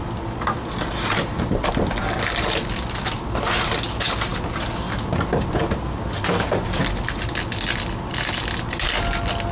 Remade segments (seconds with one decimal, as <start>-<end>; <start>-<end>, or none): none